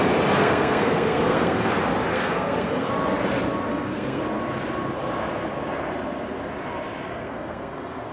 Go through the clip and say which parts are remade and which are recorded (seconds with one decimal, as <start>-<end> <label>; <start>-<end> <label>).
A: 0.0-0.4 recorded; 0.4-1.7 remade; 1.7-2.1 recorded; 2.1-2.9 remade; 2.9-3.7 recorded; 3.7-4.2 remade; 4.2-7.1 recorded; 7.1-8.1 remade